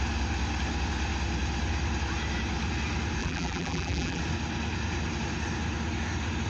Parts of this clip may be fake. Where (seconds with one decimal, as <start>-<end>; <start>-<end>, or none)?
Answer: 3.2-4.2